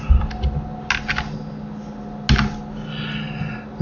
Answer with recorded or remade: recorded